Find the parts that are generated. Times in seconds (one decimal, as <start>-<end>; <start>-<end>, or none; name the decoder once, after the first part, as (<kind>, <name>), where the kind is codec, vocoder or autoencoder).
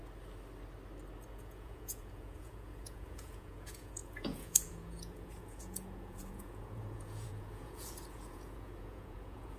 1.3-9.6 (vocoder, Vocos)